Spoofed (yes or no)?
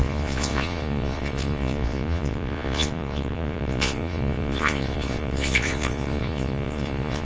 yes